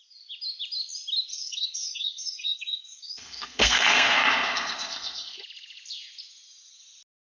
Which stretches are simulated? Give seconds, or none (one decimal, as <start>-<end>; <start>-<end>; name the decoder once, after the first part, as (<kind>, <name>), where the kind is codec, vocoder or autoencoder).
1.3-5.4 (codec, SNAC)